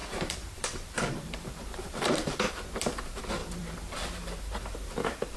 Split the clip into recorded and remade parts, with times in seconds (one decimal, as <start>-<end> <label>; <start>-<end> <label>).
0.0-5.4 remade